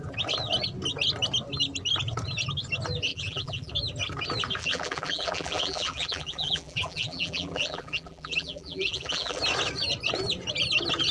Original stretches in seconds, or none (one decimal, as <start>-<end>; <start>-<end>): 0.0-3.1; 3.7-4.6; 9.4-11.1